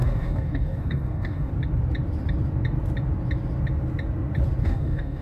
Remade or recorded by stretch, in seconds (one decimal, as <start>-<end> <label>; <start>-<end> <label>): 0.0-1.5 remade; 1.5-4.6 recorded; 4.6-5.2 remade